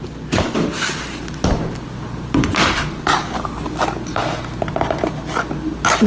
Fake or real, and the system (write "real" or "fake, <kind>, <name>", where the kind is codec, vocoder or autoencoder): real